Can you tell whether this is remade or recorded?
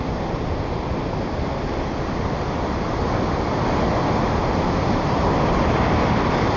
recorded